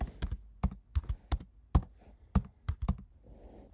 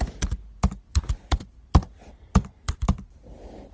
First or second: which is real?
first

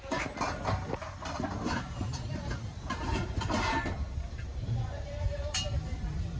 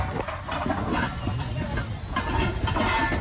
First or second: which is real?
second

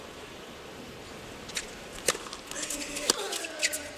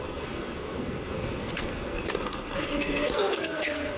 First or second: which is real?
first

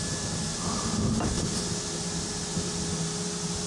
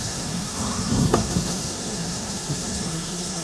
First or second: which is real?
first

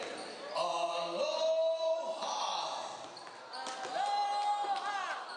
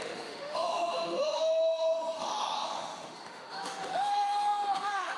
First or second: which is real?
first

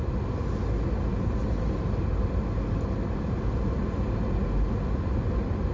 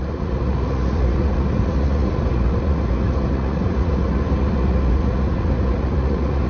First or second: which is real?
first